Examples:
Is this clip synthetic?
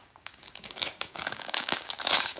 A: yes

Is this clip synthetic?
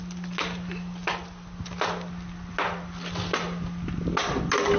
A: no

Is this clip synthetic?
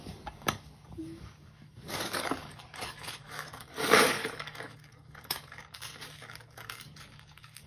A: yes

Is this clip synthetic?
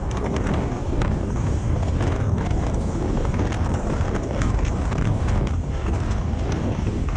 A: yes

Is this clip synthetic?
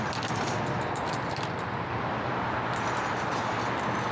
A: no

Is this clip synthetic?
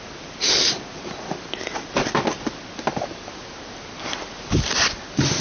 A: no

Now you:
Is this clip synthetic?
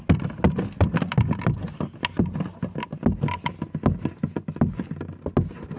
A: no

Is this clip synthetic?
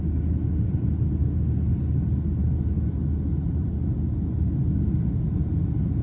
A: no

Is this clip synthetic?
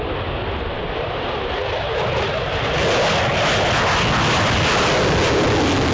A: no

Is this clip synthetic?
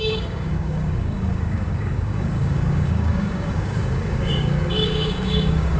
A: yes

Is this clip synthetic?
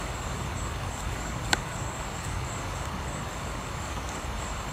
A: yes